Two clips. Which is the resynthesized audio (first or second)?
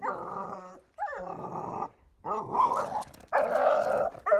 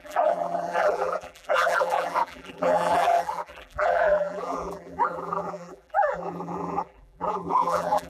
second